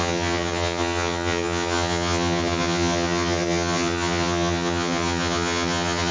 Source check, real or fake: fake